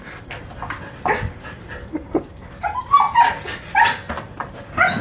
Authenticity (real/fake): real